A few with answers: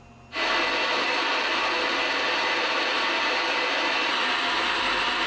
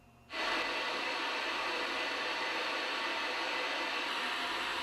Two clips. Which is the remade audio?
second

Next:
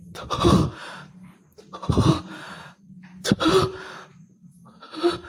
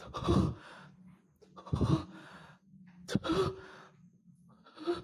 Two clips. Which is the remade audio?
first